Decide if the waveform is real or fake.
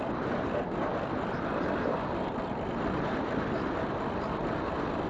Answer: real